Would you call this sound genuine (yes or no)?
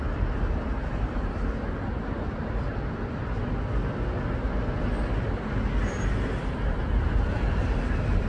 yes